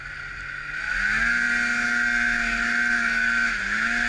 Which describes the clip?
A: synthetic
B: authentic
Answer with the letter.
B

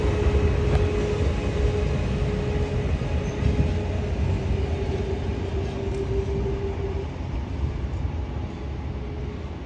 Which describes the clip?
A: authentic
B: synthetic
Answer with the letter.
A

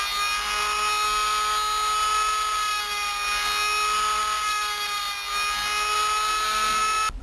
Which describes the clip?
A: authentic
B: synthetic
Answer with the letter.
A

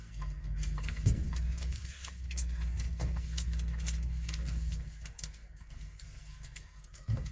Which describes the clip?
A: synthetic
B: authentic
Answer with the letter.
A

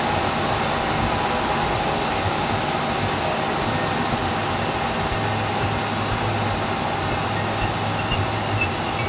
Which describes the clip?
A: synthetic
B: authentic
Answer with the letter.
B